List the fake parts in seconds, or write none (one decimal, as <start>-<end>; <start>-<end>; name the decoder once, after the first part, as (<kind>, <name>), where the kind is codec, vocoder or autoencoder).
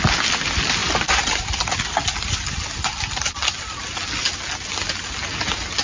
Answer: none